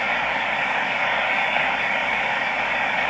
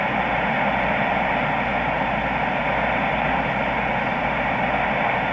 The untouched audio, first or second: second